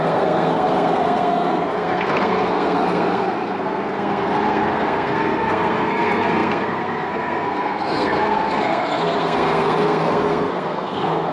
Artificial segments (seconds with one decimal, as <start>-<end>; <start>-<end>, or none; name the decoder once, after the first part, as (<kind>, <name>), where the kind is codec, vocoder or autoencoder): 0.0-11.3 (codec, SNAC)